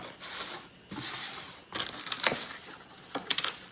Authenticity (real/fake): real